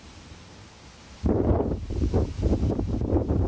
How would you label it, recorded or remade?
remade